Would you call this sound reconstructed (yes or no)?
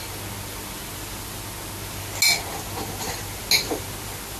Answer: no